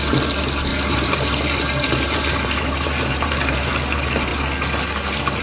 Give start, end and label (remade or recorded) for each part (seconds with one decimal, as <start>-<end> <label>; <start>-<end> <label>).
0.0-0.7 recorded; 0.7-3.7 remade; 3.7-5.4 recorded